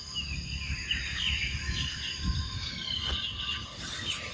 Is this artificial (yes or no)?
no